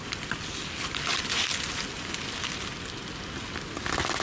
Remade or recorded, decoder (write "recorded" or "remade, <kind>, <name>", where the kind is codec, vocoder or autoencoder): recorded